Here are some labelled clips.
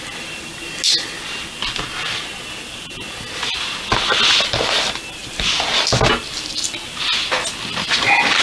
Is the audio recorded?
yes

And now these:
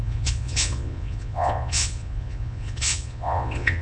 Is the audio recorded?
no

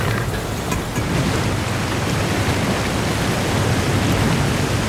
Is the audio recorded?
yes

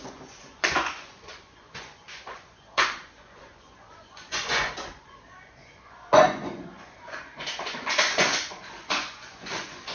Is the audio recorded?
no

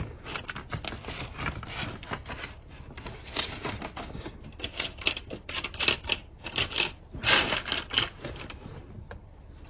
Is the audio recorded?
yes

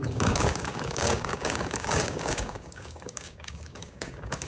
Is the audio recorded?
no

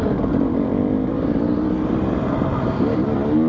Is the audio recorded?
yes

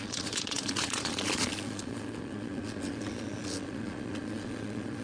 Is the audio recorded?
no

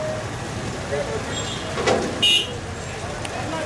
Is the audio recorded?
yes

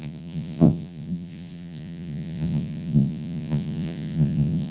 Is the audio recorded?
no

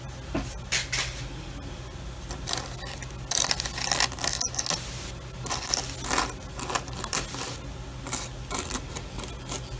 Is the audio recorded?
yes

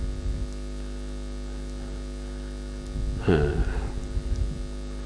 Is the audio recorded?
yes